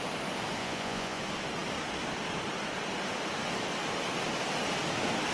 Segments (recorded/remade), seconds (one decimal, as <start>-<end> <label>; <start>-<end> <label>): 0.0-0.6 recorded; 0.6-1.2 remade; 1.2-5.3 recorded